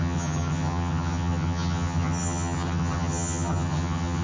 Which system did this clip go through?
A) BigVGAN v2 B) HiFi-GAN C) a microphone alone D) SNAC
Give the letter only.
B